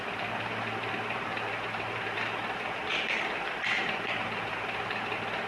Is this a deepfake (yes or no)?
yes